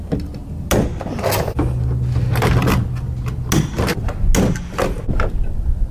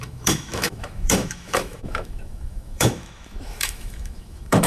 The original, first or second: first